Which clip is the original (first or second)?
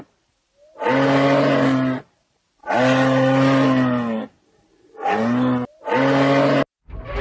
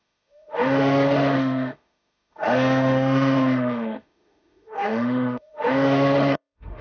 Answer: first